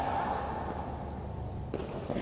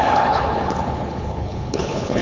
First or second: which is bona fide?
first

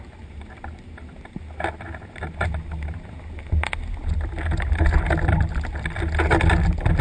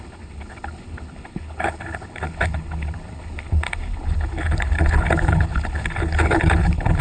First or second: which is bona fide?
first